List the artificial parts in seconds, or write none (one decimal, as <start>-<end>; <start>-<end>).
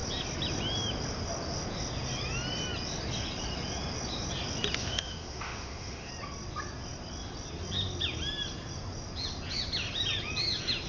4.8-6.1